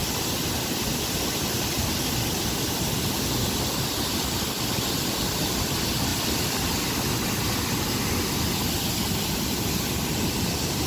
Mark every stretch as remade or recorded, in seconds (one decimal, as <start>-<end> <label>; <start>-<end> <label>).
0.0-10.9 recorded